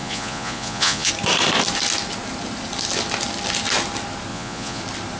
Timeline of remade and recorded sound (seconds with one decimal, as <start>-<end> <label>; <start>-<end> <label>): 0.0-1.1 remade; 1.1-4.3 recorded; 4.3-4.8 remade; 4.8-5.2 recorded